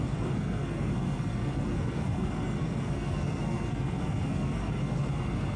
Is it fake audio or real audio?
fake